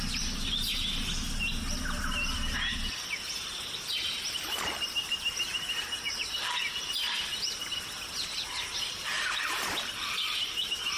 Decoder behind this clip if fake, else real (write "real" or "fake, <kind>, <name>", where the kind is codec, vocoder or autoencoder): real